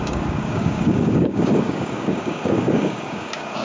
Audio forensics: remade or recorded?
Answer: remade